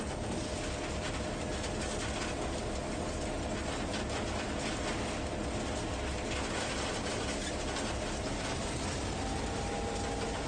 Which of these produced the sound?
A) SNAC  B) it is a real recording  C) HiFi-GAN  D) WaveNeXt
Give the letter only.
B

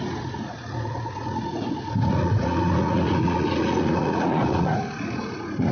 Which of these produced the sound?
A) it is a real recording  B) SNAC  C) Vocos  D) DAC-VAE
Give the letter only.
C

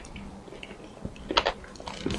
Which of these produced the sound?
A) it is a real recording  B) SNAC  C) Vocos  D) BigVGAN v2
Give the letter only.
A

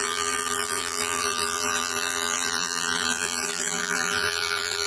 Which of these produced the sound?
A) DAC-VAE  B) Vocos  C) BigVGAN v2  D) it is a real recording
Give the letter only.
C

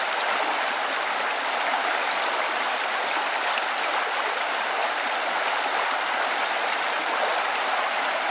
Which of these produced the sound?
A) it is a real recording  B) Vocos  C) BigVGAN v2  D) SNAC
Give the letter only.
A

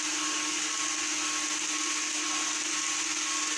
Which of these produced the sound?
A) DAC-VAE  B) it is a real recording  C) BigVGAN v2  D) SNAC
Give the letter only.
B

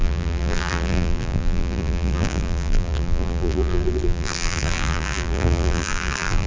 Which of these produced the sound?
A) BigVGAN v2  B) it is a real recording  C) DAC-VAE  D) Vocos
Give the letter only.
A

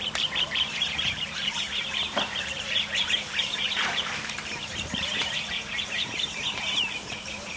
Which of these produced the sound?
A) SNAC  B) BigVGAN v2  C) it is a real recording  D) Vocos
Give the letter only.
B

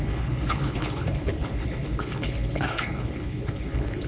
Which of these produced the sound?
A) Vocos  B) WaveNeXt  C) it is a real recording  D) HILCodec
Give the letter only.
D